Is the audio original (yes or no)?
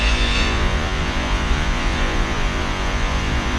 no